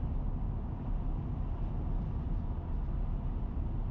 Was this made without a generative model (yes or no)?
yes